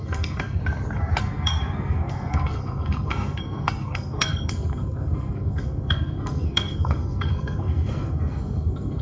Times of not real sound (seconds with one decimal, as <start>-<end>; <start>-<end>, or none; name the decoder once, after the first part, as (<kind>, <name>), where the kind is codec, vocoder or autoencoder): 0.0-0.6 (codec, SNAC); 1.2-9.0